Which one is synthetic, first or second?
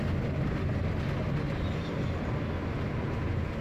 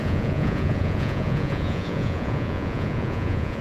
second